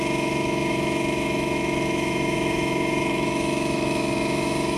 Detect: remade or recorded remade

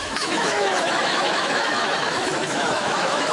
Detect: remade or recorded remade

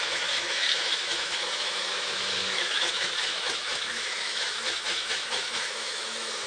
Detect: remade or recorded remade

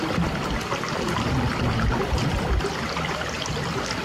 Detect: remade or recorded recorded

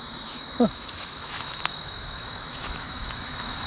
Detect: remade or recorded remade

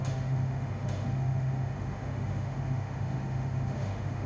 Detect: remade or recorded remade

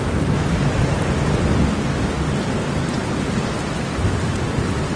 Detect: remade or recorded recorded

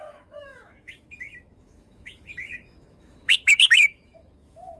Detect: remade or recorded remade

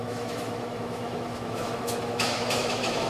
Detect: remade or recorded remade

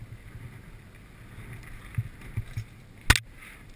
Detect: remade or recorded recorded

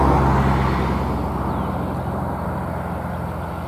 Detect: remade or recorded recorded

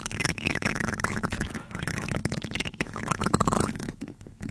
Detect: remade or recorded remade